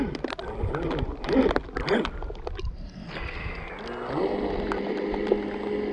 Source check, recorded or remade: recorded